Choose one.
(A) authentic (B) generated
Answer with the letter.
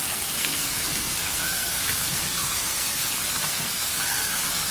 B